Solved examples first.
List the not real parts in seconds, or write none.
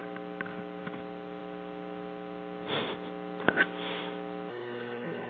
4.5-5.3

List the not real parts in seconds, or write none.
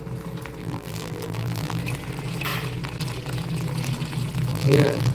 0.6-1.8; 4.5-5.1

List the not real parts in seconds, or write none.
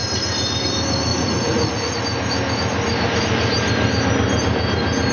1.1-2.0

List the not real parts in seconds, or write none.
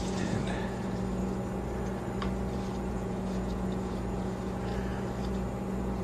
0.0-1.2; 2.9-4.7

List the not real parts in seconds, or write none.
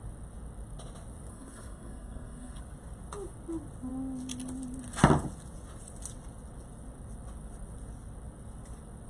1.3-2.6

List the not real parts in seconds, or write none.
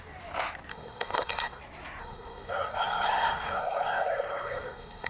0.7-1.6; 2.0-5.1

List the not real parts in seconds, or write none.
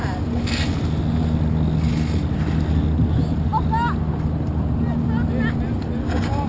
none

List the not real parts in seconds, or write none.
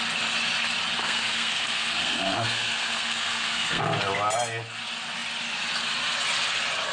1.0-3.8